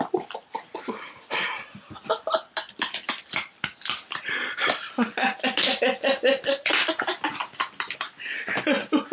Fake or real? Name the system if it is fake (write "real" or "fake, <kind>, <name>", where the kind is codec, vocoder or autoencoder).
real